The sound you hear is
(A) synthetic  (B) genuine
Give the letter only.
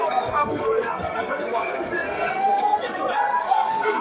A